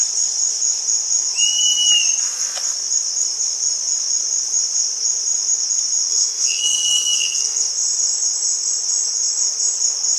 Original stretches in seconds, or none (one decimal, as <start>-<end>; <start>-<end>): 0.0-6.1; 7.7-10.2